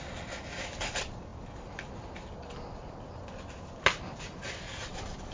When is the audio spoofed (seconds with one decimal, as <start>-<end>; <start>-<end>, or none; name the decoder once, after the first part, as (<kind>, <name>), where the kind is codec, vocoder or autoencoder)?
none